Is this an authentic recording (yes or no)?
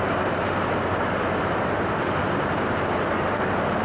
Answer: no